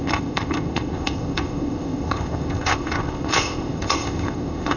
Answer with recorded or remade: remade